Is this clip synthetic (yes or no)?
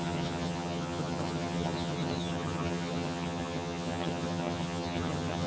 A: yes